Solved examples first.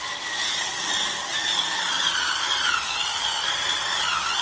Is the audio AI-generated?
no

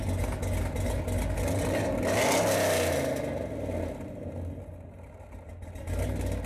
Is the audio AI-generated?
no